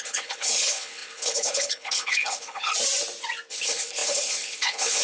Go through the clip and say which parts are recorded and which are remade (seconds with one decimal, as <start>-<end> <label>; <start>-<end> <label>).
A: 0.0-2.7 remade; 2.7-3.5 recorded; 3.5-5.0 remade